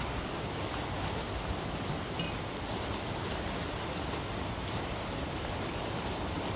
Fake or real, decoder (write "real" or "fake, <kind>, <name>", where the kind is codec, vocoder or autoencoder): real